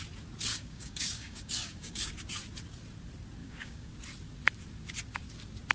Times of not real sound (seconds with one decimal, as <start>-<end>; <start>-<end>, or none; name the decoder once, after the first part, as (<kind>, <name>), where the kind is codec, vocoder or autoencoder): 0.5-2.1 (codec, DAC); 3.4-3.9